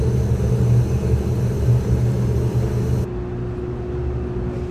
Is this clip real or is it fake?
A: real